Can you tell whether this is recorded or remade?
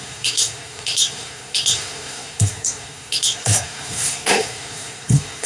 remade